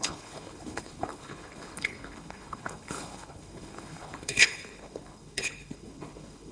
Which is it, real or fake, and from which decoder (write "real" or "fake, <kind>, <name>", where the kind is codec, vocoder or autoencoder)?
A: fake, codec, HILCodec